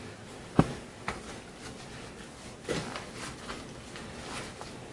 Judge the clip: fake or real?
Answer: real